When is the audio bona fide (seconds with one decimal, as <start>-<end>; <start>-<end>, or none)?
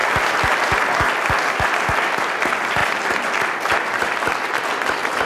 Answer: 0.0-2.8; 4.2-5.3